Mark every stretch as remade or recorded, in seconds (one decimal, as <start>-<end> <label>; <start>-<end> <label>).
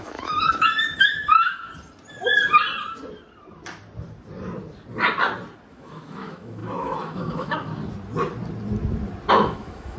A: 0.0-1.7 remade; 1.7-5.7 recorded; 5.7-7.7 remade; 7.7-9.3 recorded; 9.3-10.0 remade